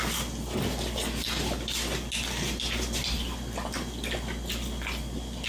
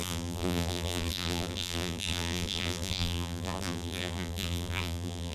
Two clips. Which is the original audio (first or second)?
first